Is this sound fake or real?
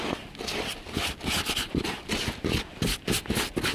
real